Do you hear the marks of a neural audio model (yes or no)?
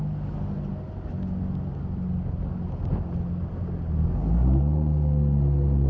no